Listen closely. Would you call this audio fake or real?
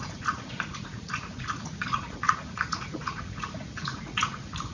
fake